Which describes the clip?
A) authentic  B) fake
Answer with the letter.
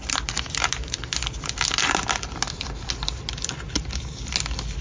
A